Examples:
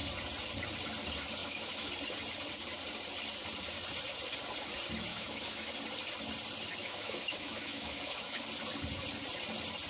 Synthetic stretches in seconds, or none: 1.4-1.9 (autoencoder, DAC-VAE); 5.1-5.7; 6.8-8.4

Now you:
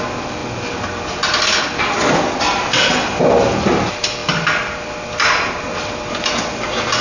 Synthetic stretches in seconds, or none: none

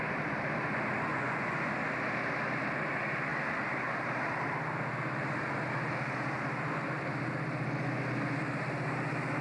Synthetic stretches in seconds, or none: 1.1-1.7 (vocoder, Vocos)

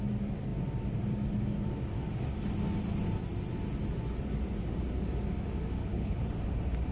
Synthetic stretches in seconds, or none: 5.8-6.3 (codec, HILCodec)